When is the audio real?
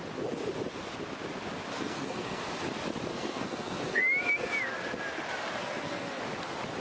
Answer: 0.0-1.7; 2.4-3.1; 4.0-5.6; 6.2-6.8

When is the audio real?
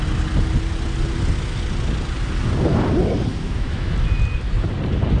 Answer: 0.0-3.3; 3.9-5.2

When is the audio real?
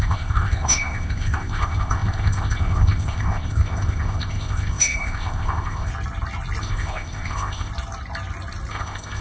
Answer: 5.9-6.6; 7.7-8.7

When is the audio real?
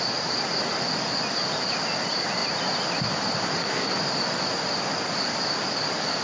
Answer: 0.0-6.2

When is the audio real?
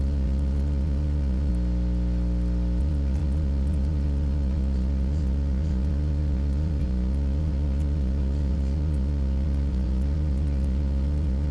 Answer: 1.5-2.8